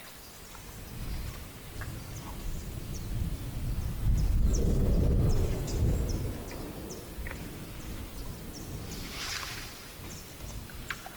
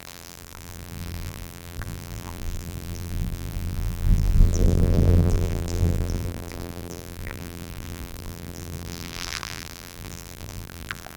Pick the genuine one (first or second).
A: first